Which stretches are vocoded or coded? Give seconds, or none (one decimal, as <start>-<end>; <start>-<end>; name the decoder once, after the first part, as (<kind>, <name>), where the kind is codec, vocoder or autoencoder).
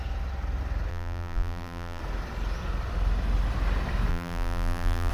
0.9-2.0 (vocoder, BigVGAN v2); 4.1-5.1